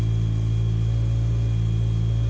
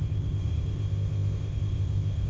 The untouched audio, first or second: first